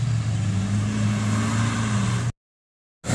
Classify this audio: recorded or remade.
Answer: recorded